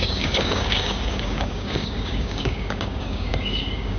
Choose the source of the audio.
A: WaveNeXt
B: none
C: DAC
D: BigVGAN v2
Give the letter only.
C